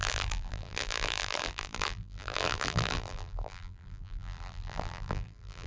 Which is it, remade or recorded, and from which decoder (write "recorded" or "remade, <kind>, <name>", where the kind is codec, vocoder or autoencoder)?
remade, vocoder, BigVGAN v2